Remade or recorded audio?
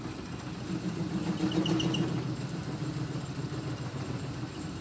remade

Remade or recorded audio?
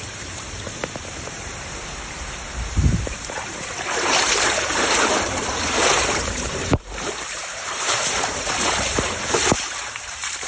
remade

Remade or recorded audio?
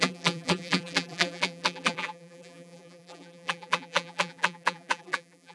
remade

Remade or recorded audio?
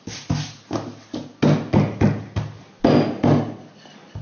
recorded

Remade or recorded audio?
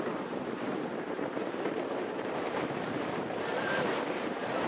remade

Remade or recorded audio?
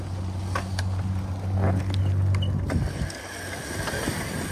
recorded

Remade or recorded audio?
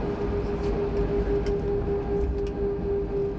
recorded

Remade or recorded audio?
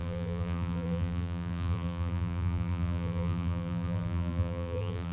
remade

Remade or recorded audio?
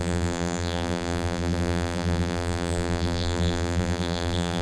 remade